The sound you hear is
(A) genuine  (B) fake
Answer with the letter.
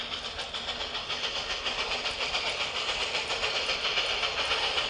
A